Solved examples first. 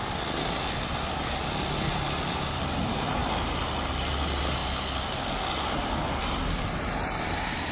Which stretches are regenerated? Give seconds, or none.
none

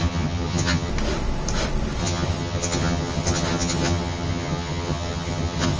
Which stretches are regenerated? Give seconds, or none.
0.0-0.9 (vocoder, HiFi-GAN); 2.0-5.8